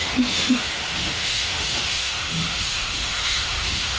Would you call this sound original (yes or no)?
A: no